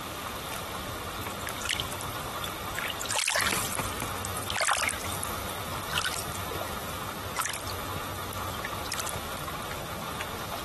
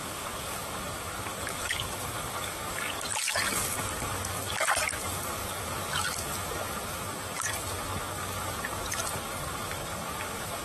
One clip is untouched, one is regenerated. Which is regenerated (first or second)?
second